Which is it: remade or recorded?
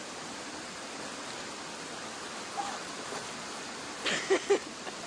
remade